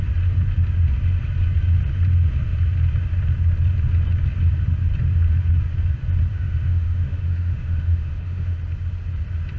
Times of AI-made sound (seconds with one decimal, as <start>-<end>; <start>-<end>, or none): 6.3-8.6